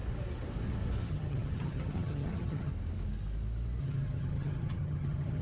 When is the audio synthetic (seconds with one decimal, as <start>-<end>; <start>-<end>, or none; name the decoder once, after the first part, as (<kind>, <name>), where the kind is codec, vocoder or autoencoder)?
1.0-2.7 (vocoder, HiFi-GAN); 3.8-5.4